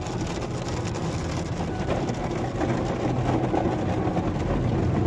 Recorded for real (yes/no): yes